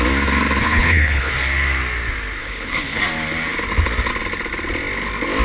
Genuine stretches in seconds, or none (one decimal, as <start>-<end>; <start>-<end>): 0.0-0.6; 1.3-2.4; 3.0-5.4